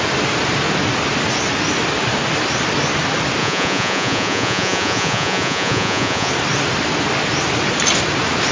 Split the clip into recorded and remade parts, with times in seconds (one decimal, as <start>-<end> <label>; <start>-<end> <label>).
0.0-3.4 recorded; 3.4-6.3 remade; 6.3-8.5 recorded